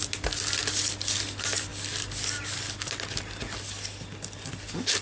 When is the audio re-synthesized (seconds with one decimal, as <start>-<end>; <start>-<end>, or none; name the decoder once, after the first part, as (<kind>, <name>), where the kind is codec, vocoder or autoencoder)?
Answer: none